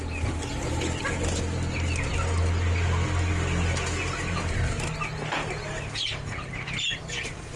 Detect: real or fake real